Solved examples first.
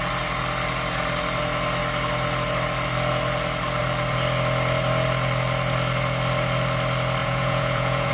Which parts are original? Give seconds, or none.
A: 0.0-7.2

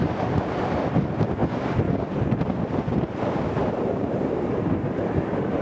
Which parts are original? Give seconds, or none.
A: 0.0-3.6